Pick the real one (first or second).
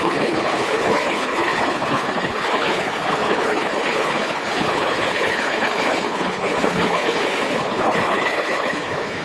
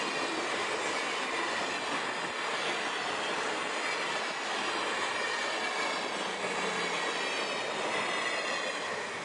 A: second